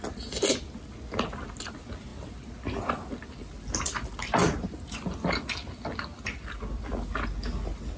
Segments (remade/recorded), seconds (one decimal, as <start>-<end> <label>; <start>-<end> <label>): 0.0-8.0 recorded

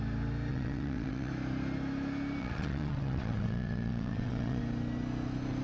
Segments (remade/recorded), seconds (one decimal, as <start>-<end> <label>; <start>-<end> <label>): 0.0-0.5 recorded; 0.5-1.3 remade; 1.3-2.4 recorded; 2.4-4.6 remade; 4.6-5.6 recorded

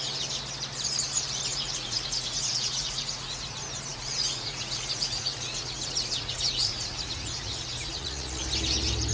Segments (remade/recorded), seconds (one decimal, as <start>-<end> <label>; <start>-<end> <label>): 0.0-1.5 recorded; 1.5-3.4 remade; 3.4-3.9 recorded; 3.9-8.4 remade; 8.4-9.1 recorded

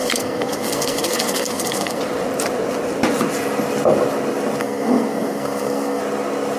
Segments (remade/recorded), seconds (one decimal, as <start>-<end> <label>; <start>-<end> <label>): 0.0-2.0 remade; 2.0-4.6 recorded; 4.6-6.0 remade; 6.0-6.6 recorded

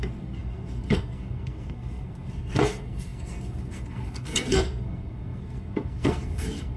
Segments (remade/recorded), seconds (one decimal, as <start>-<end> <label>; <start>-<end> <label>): 0.0-6.8 remade

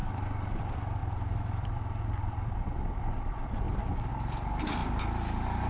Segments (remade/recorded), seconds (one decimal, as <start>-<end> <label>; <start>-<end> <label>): 0.0-4.8 remade; 4.8-5.7 recorded